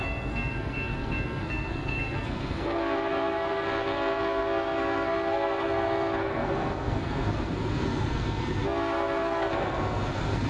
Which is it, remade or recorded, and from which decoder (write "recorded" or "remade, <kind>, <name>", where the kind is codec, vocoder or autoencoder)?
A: remade, codec, SNAC